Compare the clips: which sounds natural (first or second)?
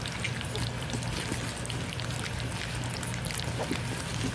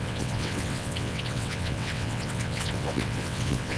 first